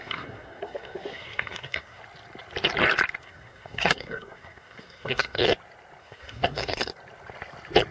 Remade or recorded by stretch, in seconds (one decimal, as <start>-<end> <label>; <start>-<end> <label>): 0.0-2.0 remade; 2.0-3.2 recorded; 3.2-5.4 remade; 5.4-6.0 recorded; 6.0-6.9 remade; 6.9-7.9 recorded